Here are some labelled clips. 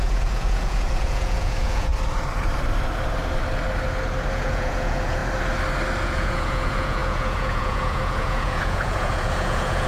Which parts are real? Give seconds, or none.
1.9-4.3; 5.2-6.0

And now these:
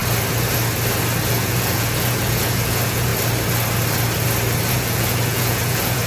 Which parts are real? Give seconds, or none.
0.0-1.3; 3.1-4.7

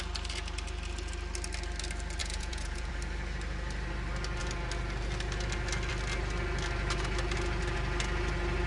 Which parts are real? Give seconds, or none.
0.0-2.2; 2.9-8.7